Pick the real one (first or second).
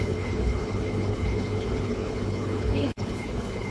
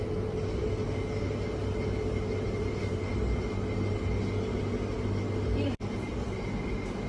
second